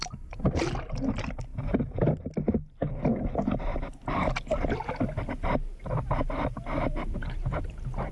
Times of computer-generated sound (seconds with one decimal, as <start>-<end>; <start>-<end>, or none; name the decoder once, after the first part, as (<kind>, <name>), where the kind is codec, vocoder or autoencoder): none